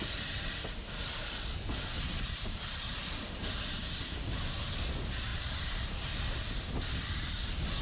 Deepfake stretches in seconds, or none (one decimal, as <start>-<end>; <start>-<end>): none